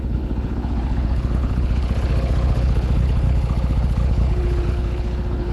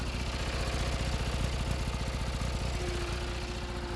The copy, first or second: first